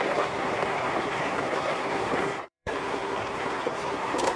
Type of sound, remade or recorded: remade